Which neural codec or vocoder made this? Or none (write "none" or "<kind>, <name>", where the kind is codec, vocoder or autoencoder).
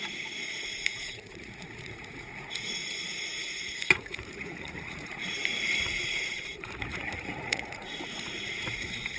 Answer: vocoder, Vocos